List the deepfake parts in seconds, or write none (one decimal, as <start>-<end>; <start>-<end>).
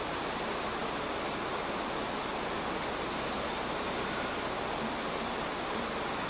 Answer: none